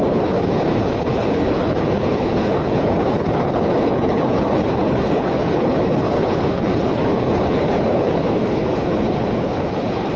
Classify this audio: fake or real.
fake